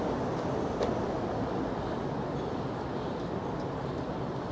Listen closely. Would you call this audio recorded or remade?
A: recorded